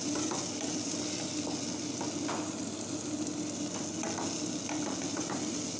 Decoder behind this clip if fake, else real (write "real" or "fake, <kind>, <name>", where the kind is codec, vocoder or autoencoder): real